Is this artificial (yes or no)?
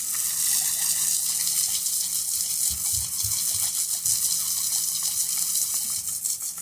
no